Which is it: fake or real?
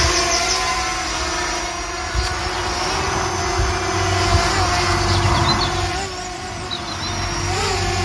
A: real